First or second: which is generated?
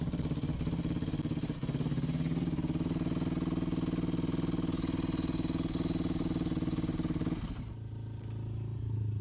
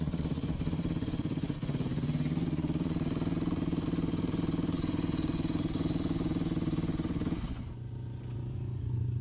second